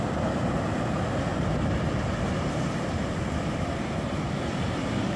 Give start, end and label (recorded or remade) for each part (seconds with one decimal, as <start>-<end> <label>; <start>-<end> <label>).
0.0-1.3 recorded; 1.3-3.8 remade; 3.8-5.2 recorded